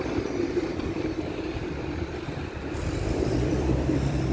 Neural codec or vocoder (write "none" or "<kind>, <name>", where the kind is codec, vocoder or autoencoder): vocoder, BigVGAN v2